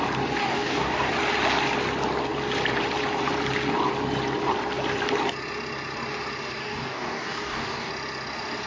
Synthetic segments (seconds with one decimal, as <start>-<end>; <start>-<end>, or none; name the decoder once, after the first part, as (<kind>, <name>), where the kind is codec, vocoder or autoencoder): 0.4-1.1 (codec, DAC); 6.6-7.9